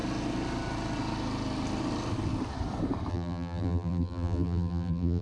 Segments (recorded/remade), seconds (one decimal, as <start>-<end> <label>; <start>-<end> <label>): 0.0-3.1 recorded; 3.1-5.2 remade